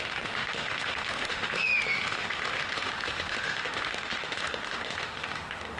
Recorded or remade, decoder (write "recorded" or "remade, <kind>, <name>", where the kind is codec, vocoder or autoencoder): remade, autoencoder, DAC-VAE